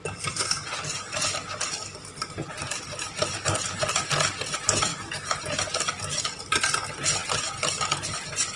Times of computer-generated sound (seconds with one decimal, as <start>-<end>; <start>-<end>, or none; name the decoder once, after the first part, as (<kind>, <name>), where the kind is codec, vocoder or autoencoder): none